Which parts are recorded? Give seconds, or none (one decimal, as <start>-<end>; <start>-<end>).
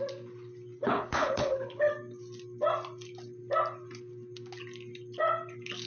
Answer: 0.0-0.8; 1.9-5.9